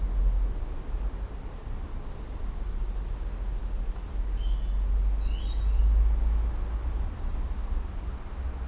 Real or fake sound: real